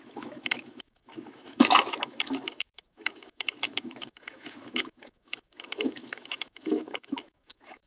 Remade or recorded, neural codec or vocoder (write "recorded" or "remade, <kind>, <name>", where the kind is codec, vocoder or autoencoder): remade, autoencoder, DAC-VAE